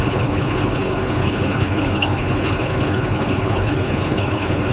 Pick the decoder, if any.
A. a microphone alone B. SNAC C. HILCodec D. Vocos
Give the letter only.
C